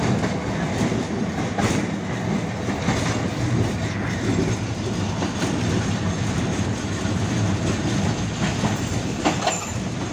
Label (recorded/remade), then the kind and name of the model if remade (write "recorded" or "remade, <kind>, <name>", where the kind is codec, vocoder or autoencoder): recorded